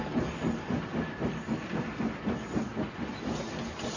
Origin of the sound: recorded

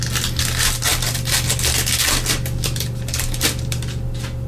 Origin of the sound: recorded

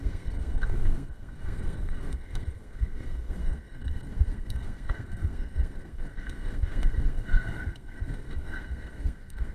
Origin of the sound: remade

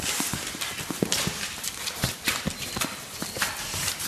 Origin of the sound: recorded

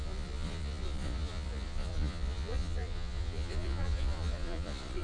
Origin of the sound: remade